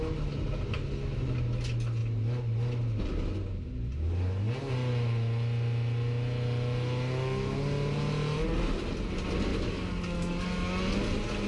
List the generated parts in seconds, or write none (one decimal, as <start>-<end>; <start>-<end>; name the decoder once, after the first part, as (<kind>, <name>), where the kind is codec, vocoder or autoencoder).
9.5-10.8 (codec, DAC)